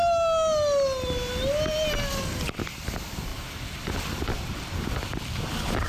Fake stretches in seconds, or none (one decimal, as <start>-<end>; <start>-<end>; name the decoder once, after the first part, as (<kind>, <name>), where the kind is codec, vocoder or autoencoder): 3.3-5.5 (vocoder, BigVGAN v2)